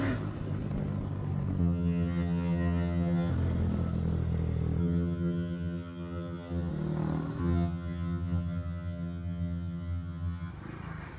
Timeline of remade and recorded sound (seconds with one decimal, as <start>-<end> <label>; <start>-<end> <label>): 0.0-1.6 recorded; 1.6-3.3 remade; 3.3-4.8 recorded; 4.8-6.7 remade; 6.7-7.4 recorded; 7.4-10.5 remade; 10.5-11.2 recorded